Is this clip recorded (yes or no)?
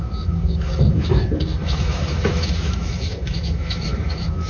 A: no